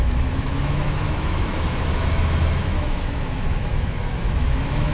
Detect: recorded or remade remade